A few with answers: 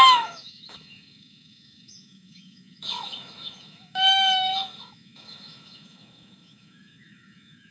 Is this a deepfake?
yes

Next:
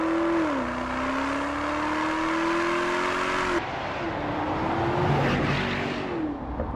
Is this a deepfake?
no